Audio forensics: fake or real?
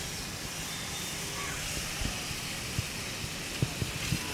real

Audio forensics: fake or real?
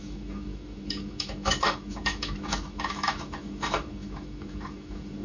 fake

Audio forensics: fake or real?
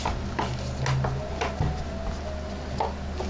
real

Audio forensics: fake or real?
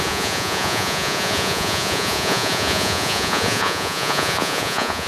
fake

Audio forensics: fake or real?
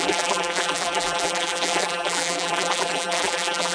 fake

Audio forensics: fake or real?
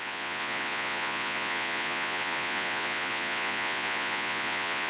fake